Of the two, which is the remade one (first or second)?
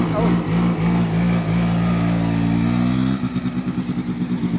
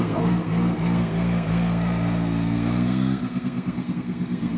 second